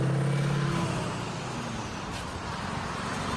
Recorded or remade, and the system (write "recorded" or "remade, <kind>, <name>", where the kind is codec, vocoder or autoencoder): recorded